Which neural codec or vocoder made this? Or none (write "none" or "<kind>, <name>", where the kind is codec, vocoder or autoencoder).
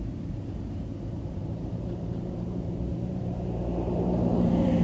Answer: vocoder, BigVGAN v2